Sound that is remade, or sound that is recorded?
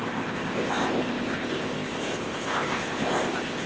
remade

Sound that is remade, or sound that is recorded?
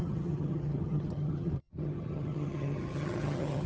remade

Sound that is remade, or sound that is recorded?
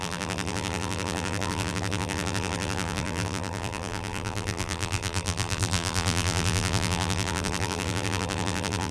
remade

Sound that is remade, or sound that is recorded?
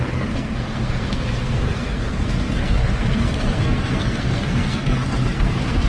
remade